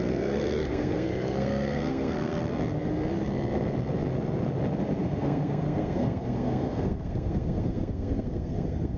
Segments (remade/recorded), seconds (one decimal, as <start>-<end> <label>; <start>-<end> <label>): 0.0-2.5 remade; 2.5-5.0 recorded; 5.0-9.0 remade